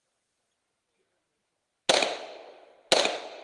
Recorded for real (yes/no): yes